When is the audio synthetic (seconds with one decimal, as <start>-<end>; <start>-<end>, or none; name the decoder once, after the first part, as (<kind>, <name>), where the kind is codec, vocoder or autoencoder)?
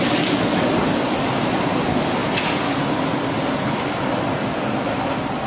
none